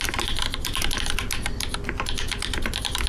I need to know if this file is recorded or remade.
recorded